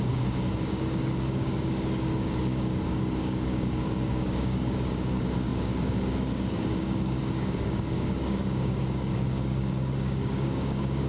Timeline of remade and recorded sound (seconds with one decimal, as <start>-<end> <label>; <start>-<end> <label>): 0.0-11.1 remade